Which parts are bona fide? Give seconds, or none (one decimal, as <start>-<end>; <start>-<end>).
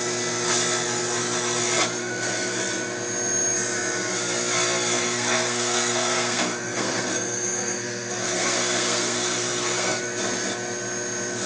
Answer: 0.0-2.0; 2.6-5.0; 10.0-11.5